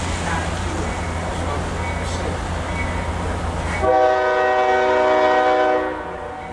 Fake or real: real